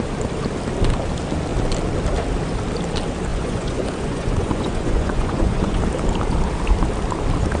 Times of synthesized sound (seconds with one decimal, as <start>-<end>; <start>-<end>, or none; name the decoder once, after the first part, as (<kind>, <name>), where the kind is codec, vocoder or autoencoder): 3.3-5.8 (vocoder, Vocos)